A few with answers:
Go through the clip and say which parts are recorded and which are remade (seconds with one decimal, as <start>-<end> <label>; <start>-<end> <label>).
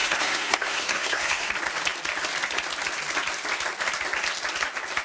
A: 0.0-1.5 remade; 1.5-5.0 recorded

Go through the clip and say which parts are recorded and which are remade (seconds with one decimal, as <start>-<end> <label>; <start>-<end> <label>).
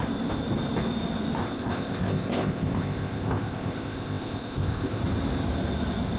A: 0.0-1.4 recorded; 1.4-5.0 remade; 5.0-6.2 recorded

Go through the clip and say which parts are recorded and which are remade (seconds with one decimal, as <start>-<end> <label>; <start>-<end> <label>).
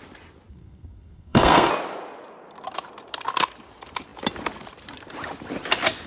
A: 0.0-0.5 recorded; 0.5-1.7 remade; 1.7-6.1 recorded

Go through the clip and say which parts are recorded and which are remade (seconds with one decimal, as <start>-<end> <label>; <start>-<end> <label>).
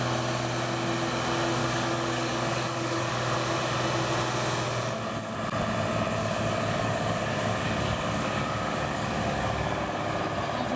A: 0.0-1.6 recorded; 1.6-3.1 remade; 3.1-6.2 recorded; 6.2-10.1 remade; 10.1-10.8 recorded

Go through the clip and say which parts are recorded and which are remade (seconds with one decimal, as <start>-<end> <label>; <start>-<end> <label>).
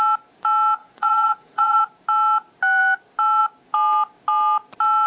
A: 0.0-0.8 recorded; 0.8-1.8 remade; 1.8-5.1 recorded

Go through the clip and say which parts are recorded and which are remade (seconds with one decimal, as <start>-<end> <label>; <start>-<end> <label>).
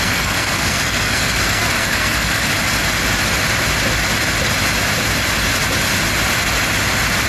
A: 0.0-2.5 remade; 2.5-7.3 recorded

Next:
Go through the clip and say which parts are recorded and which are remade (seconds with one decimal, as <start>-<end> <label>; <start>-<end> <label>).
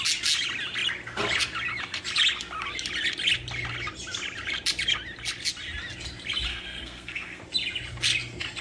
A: 0.0-6.5 recorded; 6.5-7.4 remade; 7.4-8.6 recorded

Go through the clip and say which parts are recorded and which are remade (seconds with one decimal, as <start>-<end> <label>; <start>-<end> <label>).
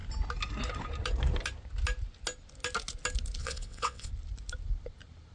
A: 0.0-3.4 recorded; 3.4-4.1 remade; 4.1-5.3 recorded